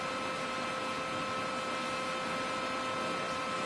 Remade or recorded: recorded